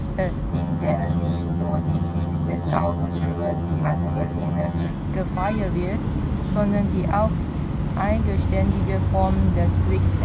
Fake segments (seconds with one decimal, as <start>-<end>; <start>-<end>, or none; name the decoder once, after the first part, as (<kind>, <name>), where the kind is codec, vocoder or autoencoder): 0.5-4.9 (vocoder, HiFi-GAN)